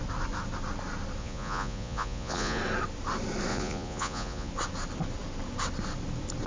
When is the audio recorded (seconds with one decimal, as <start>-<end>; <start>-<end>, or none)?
0.0-1.2; 2.6-3.5; 4.5-6.5